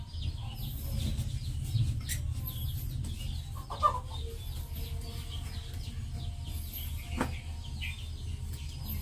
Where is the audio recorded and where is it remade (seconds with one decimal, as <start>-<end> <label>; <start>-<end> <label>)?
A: 0.0-9.0 recorded